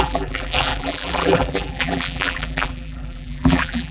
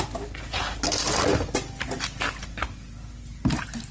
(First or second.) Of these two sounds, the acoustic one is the second